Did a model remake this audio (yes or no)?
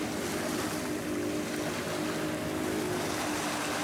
no